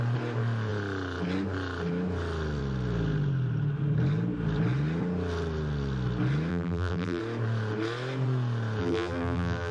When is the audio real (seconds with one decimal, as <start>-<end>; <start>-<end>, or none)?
0.0-6.5; 7.2-8.8